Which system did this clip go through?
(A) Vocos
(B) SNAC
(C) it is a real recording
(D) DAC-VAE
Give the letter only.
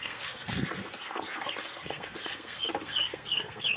B